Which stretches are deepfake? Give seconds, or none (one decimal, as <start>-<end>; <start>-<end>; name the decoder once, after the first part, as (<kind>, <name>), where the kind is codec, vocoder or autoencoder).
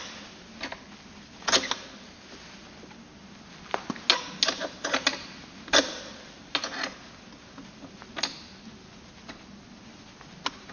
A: none